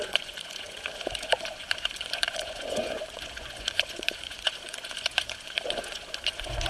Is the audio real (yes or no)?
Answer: no